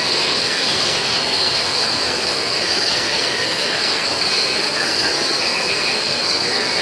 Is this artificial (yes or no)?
yes